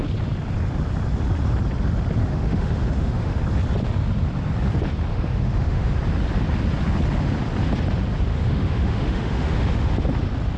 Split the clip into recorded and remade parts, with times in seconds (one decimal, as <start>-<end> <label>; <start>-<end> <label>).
0.0-2.2 recorded; 2.2-3.4 remade; 3.4-5.1 recorded; 5.1-5.9 remade; 5.9-8.3 recorded; 8.3-9.9 remade; 9.9-10.6 recorded